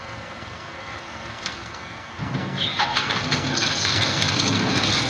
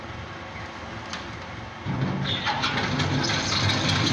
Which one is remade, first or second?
first